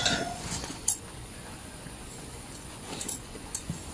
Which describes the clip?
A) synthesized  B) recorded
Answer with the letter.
A